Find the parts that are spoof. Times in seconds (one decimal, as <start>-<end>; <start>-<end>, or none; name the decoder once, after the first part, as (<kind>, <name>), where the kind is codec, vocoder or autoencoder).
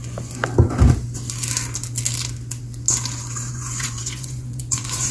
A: 0.0-0.4 (vocoder, Vocos); 3.5-5.1